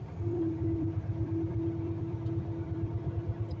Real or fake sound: fake